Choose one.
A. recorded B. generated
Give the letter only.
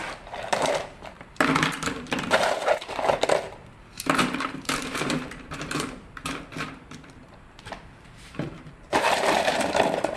B